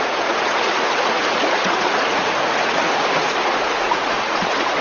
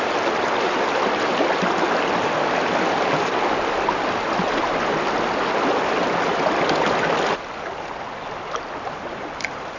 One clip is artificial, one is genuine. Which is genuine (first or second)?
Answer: second